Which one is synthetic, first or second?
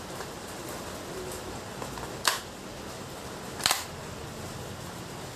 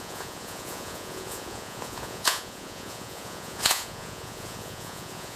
second